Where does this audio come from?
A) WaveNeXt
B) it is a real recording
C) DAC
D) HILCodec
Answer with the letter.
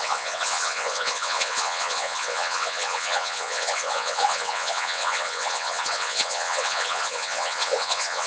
A